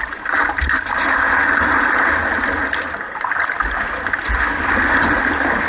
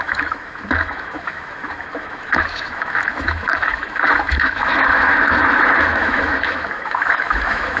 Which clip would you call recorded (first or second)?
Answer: first